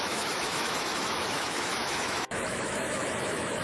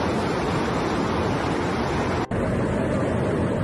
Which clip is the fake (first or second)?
first